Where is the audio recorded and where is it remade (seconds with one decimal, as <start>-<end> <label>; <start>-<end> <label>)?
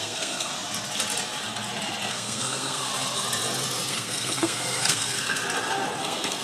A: 0.0-0.5 remade; 0.5-2.1 recorded; 2.1-2.9 remade; 2.9-3.9 recorded; 3.9-5.4 remade; 5.4-6.0 recorded; 6.0-6.4 remade